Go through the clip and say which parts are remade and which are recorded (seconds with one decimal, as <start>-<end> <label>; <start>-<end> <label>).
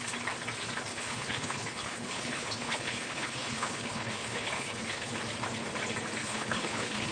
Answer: 0.0-0.9 recorded; 0.9-5.1 remade; 5.1-6.2 recorded; 6.2-7.1 remade